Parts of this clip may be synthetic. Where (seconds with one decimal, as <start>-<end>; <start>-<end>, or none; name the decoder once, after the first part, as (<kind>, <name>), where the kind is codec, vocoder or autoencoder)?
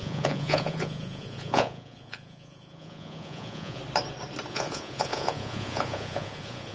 0.0-3.8 (vocoder, Vocos); 4.5-6.7